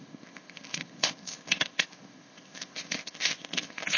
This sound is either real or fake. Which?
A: fake